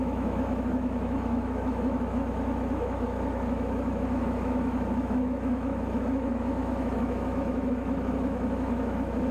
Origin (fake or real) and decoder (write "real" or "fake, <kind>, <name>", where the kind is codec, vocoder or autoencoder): fake, autoencoder, DAC-VAE